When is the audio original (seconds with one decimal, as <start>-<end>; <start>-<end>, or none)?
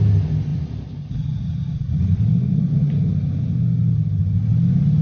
0.0-0.5; 3.5-5.0